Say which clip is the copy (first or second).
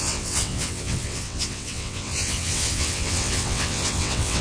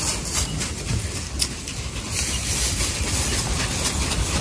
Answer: first